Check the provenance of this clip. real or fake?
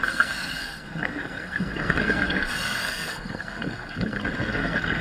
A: fake